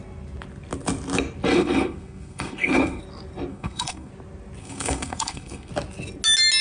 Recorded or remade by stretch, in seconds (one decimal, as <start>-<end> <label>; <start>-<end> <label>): 0.0-1.5 recorded; 1.5-3.0 remade; 3.0-3.5 recorded; 3.5-4.1 remade; 4.1-4.6 recorded; 4.6-5.7 remade; 5.7-6.6 recorded